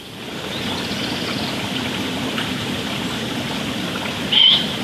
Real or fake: real